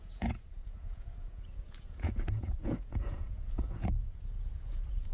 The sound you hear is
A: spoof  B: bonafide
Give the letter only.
A